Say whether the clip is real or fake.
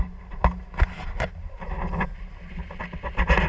real